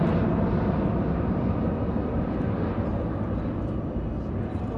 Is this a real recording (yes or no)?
yes